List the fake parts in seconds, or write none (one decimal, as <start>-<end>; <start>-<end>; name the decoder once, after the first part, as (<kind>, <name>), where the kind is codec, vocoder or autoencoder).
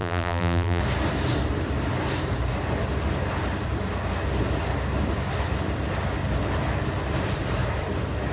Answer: 0.0-0.8 (vocoder, BigVGAN v2)